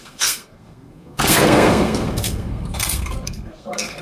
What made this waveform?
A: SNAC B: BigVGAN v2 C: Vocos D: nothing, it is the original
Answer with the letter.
A